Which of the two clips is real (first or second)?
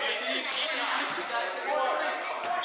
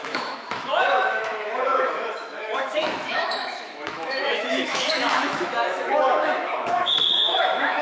first